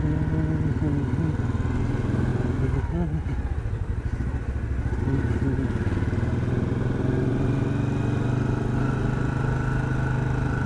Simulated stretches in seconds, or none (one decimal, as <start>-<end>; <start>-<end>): none